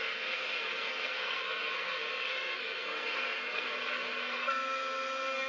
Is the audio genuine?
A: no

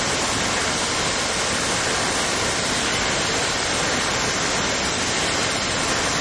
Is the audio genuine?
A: yes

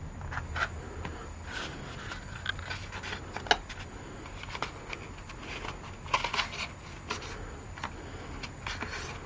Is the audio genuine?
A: yes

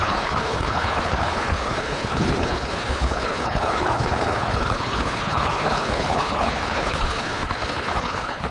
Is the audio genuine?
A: no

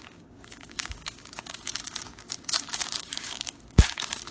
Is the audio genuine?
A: no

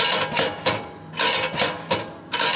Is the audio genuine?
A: yes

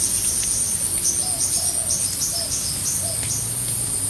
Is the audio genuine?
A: yes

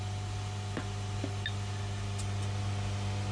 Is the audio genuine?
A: yes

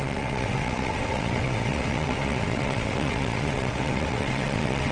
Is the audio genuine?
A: no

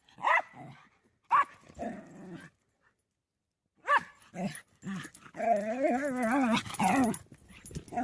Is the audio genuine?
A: yes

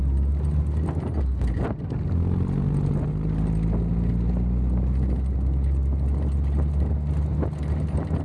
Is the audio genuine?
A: yes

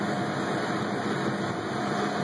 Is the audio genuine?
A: yes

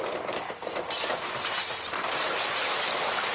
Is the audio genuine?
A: yes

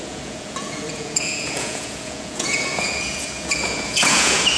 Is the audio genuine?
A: no